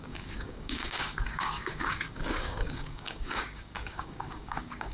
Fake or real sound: fake